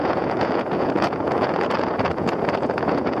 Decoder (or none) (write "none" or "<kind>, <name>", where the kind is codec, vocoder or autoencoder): vocoder, Vocos